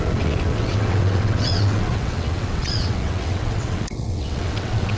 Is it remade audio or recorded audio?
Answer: remade